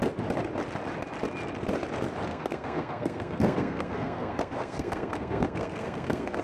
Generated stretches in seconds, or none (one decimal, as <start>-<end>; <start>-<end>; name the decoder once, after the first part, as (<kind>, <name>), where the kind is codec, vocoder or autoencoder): 2.3-6.4 (codec, SNAC)